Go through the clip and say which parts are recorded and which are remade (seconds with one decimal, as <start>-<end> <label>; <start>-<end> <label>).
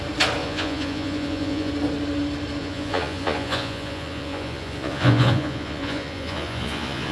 0.0-0.4 recorded; 0.4-1.7 remade; 1.7-2.6 recorded; 2.6-7.1 remade